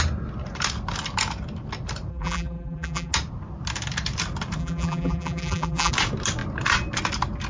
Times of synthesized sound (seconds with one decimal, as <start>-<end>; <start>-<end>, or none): 2.1-3.1; 4.6-5.9